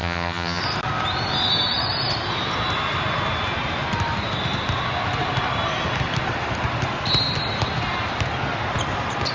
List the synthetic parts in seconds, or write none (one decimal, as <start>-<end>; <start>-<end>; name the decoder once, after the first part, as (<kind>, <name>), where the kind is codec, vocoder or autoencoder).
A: 0.0-0.6 (vocoder, HiFi-GAN)